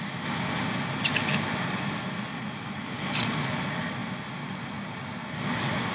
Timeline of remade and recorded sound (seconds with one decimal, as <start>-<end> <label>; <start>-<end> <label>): 0.0-2.3 recorded; 2.3-3.3 remade; 3.3-5.9 recorded